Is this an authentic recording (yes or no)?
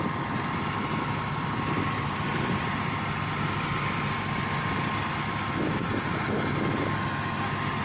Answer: yes